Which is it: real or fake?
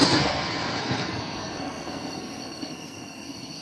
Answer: fake